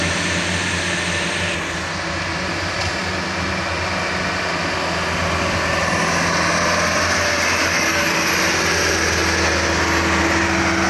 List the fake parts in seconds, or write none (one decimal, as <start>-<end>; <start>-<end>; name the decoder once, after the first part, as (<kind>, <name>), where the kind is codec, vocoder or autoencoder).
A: 7.6-8.2 (codec, DAC)